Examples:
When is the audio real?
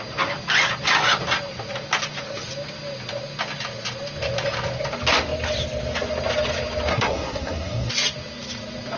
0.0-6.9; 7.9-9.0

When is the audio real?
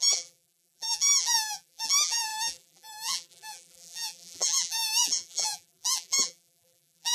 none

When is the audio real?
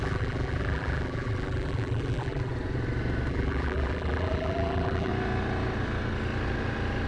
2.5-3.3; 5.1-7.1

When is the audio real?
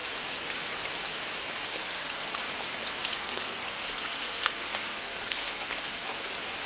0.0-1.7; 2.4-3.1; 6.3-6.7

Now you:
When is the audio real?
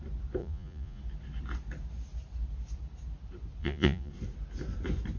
0.0-0.4; 1.0-3.6; 4.1-5.2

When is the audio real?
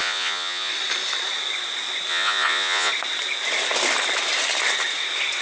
0.7-2.1; 2.9-5.4